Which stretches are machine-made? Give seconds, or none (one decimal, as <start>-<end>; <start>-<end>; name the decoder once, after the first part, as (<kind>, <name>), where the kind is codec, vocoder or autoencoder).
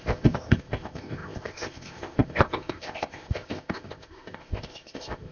0.0-5.3 (codec, ZipCodec)